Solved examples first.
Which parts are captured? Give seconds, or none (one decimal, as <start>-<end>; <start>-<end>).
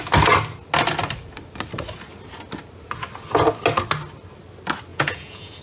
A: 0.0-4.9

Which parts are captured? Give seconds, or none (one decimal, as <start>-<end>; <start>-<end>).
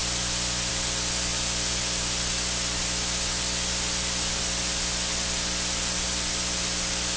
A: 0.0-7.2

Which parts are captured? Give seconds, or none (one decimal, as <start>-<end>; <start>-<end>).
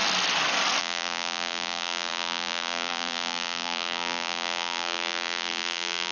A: 0.0-0.8